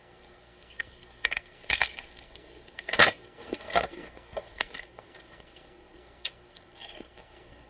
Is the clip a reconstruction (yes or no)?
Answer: yes